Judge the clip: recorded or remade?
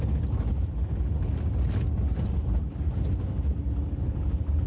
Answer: recorded